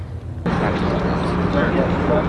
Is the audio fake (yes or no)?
no